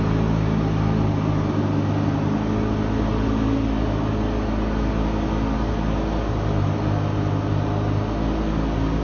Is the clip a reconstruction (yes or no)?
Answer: no